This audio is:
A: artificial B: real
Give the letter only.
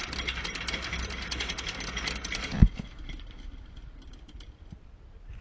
B